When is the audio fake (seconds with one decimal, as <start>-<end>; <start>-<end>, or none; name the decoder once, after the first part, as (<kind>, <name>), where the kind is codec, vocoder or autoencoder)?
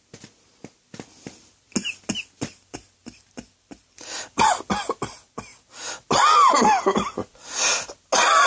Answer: none